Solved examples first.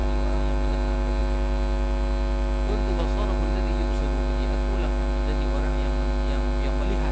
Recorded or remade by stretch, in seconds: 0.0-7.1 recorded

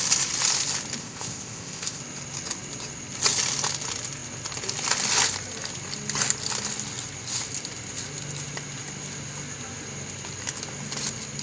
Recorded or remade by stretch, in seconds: 0.0-1.0 recorded; 1.0-2.0 remade; 2.0-11.4 recorded